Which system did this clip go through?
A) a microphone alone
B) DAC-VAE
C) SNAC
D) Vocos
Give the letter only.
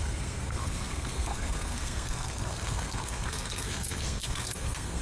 C